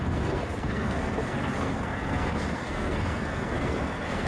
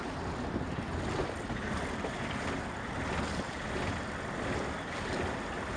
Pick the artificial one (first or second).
first